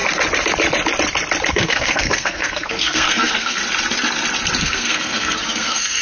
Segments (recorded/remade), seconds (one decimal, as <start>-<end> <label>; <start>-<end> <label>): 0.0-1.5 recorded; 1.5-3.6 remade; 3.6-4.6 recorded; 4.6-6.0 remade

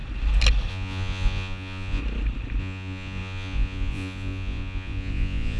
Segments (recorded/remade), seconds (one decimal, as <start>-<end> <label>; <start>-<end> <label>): 0.0-0.7 recorded; 0.7-2.0 remade; 2.0-2.6 recorded; 2.6-5.6 remade

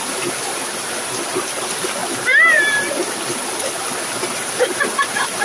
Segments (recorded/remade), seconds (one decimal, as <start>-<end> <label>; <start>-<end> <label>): 0.0-2.0 remade; 2.0-2.5 recorded; 2.5-3.0 remade; 3.0-4.3 recorded; 4.3-5.4 remade

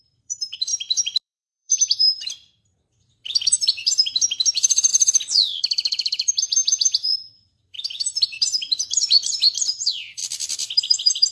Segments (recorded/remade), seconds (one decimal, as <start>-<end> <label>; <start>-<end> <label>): 0.0-4.9 remade; 4.9-5.6 recorded; 5.6-10.2 remade; 10.2-10.8 recorded; 10.8-11.3 remade

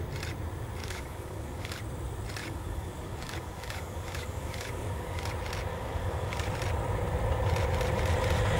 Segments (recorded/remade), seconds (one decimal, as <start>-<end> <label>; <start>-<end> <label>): 0.0-0.8 recorded; 0.8-1.8 remade; 1.8-2.4 recorded; 2.4-5.3 remade; 5.3-5.7 recorded; 5.7-6.5 remade; 6.5-8.6 recorded